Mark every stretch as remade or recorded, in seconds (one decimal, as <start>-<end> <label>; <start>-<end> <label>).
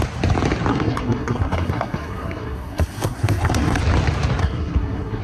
0.0-0.7 recorded; 0.7-3.8 remade; 3.8-4.4 recorded; 4.4-5.2 remade